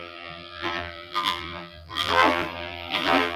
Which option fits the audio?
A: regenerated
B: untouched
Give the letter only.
A